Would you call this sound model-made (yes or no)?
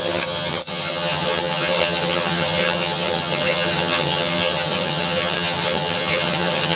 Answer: yes